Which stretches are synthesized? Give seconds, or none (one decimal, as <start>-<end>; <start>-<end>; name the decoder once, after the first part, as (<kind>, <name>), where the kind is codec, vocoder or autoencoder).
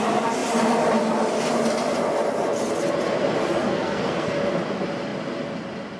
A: 3.6-4.4 (codec, SNAC)